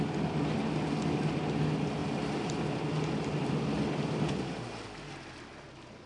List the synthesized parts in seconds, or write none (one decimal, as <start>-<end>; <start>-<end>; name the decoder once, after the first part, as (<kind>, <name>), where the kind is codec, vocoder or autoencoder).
none